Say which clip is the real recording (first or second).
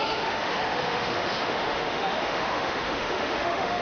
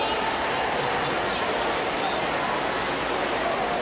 second